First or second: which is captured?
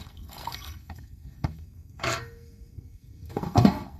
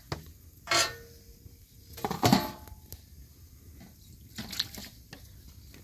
second